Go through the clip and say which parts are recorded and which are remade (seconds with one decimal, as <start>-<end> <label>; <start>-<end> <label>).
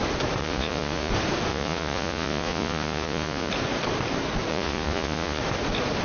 0.0-0.4 recorded; 0.4-1.1 remade; 1.1-1.5 recorded; 1.5-3.5 remade; 3.5-4.5 recorded; 4.5-5.4 remade; 5.4-6.0 recorded